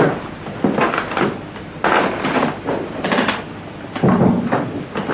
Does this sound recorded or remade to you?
recorded